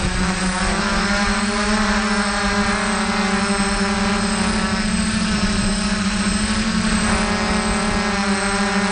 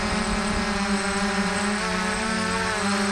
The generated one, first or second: second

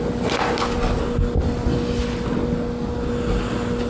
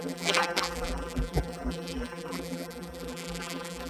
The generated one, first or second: second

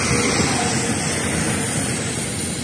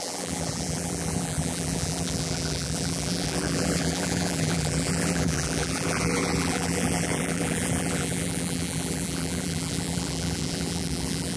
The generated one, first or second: second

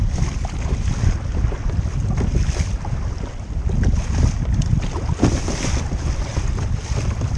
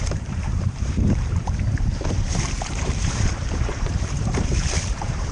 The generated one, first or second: second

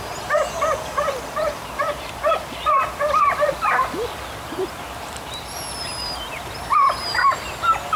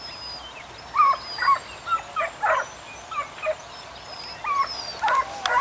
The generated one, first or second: first